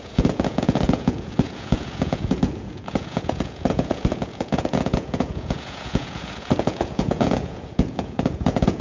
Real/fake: fake